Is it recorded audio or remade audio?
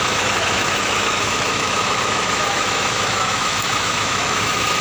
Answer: remade